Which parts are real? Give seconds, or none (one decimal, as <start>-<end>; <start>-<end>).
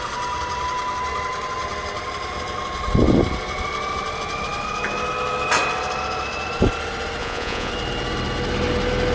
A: 0.0-7.2; 7.7-9.1